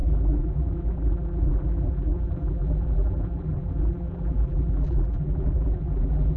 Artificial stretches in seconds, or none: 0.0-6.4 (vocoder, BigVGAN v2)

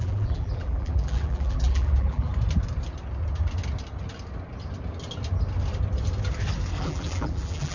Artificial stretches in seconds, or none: 0.0-2.3 (vocoder, BigVGAN v2); 6.8-7.7

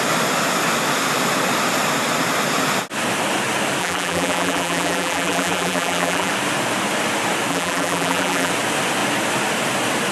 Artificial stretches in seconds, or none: 3.8-6.3 (vocoder, BigVGAN v2); 7.5-8.5

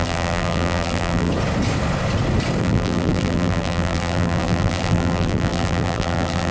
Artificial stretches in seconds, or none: 0.0-1.3 (vocoder, BigVGAN v2); 2.6-6.5

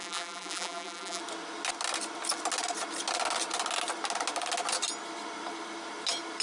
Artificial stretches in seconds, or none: 0.0-1.2 (vocoder, BigVGAN v2)

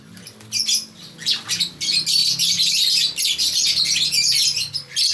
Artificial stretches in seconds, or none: none

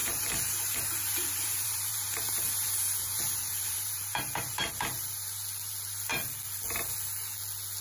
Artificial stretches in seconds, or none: 0.0-4.7 (vocoder, BigVGAN v2)